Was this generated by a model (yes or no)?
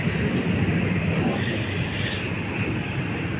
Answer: no